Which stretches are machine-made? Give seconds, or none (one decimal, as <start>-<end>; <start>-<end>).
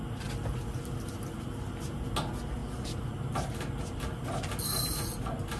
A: none